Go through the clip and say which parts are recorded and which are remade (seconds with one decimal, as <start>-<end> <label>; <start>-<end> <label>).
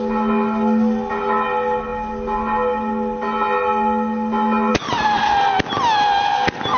0.0-6.8 recorded